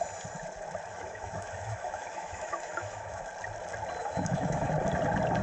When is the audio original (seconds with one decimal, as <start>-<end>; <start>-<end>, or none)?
0.0-0.9; 3.3-4.0; 4.7-5.4